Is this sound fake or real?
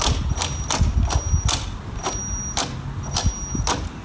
real